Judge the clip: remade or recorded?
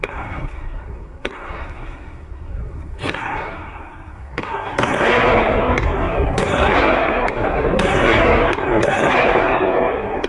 remade